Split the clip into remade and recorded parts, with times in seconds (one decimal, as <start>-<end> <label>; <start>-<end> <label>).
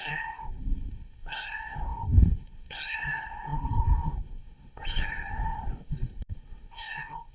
0.0-7.3 remade